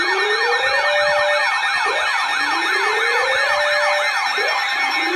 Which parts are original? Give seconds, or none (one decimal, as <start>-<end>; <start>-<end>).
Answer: 0.0-5.2